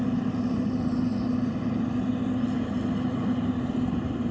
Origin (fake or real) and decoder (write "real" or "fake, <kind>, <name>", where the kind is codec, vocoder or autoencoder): real